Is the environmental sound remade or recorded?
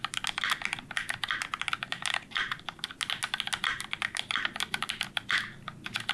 recorded